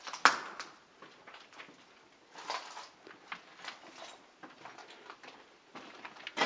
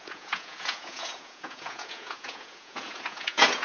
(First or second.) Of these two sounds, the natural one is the first